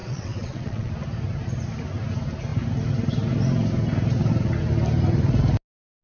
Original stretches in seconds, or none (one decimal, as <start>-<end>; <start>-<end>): 0.9-6.0